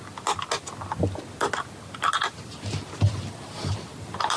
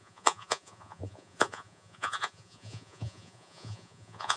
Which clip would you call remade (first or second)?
second